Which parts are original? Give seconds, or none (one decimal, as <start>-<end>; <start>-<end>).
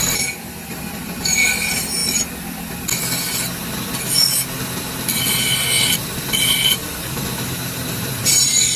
2.0-6.2